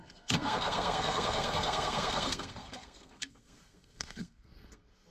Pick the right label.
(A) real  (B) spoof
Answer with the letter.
B